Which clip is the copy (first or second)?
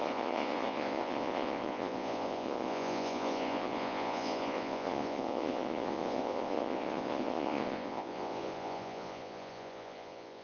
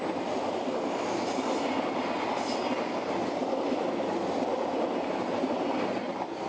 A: first